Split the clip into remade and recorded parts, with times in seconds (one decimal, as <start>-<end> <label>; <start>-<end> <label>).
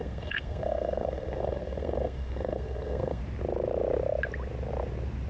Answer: 0.0-3.2 remade; 3.2-5.3 recorded